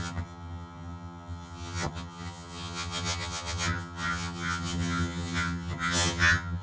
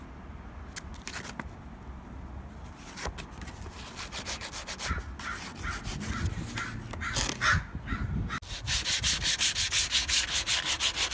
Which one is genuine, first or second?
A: second